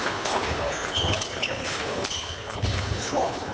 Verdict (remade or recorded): remade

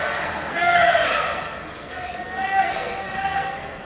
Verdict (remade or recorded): remade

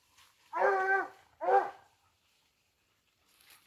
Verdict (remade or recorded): recorded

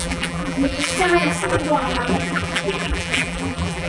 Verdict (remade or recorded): remade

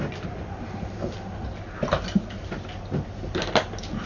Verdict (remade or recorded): recorded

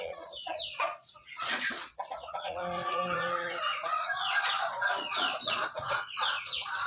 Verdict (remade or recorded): remade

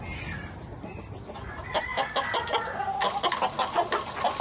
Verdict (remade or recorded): recorded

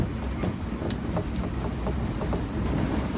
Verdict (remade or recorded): recorded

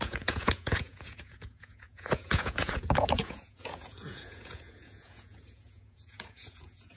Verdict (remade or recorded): remade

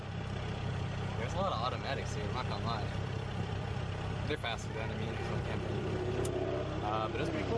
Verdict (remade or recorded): recorded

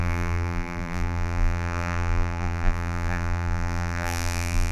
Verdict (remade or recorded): remade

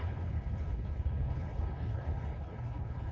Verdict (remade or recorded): remade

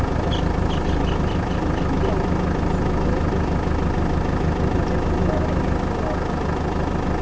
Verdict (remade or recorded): recorded